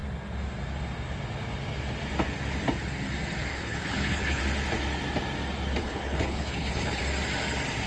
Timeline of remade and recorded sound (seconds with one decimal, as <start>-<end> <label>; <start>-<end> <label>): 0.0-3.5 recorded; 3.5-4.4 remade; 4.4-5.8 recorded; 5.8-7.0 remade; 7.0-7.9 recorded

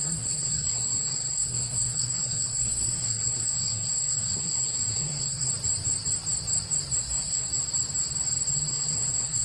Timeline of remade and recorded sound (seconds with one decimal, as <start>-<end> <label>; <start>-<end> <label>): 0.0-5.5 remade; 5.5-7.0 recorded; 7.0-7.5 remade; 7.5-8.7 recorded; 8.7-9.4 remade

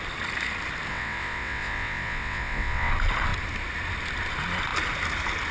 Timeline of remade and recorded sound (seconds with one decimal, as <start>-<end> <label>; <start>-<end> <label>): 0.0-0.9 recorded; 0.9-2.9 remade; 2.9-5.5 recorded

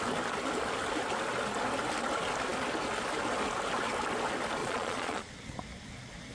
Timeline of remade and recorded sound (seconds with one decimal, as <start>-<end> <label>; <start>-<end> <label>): 0.0-4.6 recorded; 4.6-5.3 remade; 5.3-6.3 recorded

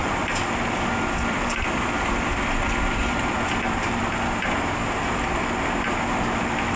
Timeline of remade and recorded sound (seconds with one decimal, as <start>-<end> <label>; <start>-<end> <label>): 0.0-4.1 remade; 4.1-6.8 recorded

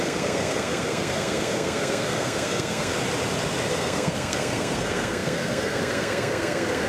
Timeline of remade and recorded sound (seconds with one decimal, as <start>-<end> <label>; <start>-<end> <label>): 0.0-2.9 remade; 2.9-3.7 recorded; 3.7-6.9 remade

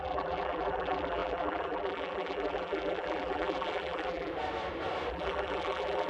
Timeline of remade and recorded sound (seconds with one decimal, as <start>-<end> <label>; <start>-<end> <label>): 0.0-4.3 remade; 4.3-5.1 recorded; 5.1-6.1 remade